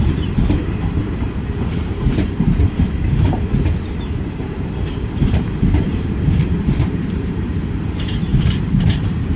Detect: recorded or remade remade